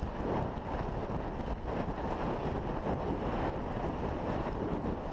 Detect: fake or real real